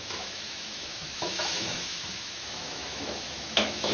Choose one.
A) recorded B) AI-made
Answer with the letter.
B